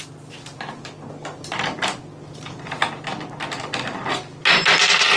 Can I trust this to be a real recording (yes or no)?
yes